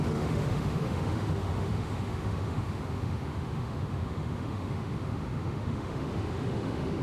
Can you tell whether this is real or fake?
fake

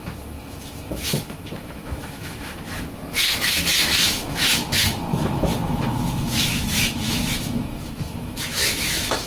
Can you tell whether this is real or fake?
fake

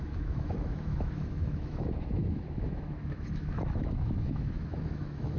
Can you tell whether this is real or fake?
fake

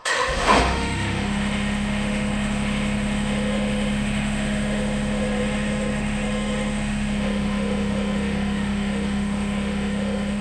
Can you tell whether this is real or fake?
fake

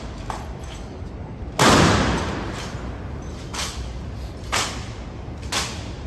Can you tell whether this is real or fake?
real